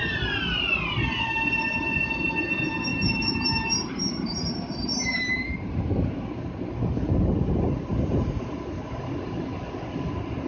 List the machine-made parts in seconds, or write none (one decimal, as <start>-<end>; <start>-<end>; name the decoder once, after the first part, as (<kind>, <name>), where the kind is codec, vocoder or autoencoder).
2.9-6.7 (vocoder, BigVGAN v2); 7.9-8.5